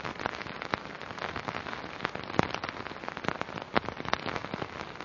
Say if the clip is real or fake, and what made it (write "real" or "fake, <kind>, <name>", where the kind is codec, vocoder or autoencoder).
real